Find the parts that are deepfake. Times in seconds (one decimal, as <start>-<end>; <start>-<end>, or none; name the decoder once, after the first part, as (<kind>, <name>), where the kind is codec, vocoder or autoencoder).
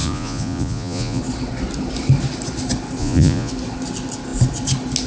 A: 0.0-1.2 (vocoder, Vocos); 3.0-3.5